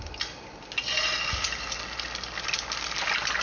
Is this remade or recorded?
recorded